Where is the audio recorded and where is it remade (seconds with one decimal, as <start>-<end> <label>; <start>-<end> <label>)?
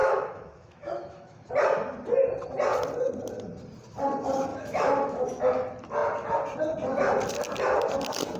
0.0-1.5 remade; 1.5-4.5 recorded; 4.5-5.4 remade; 5.4-8.4 recorded